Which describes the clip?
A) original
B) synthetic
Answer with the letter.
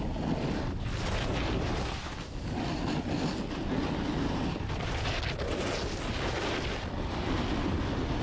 A